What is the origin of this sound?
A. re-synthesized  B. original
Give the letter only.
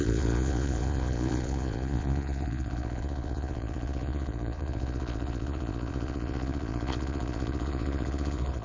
A